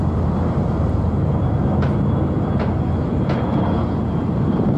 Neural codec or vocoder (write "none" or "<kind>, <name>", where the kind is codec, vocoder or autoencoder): none